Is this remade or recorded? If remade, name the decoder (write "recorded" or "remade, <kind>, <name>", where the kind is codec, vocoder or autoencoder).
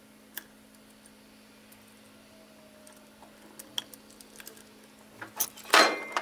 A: recorded